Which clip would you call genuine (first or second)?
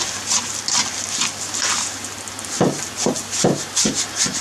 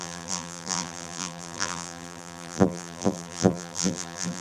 first